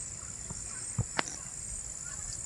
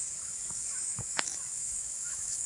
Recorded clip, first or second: first